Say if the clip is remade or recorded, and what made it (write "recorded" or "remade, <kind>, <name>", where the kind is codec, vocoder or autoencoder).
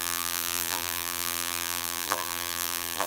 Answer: remade, vocoder, BigVGAN v2